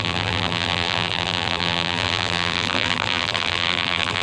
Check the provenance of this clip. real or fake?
fake